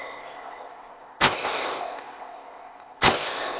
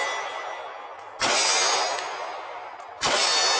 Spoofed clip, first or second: first